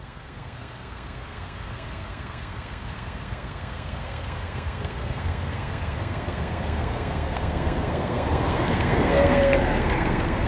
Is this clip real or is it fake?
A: fake